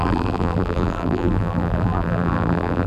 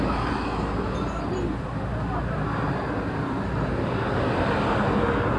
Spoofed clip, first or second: first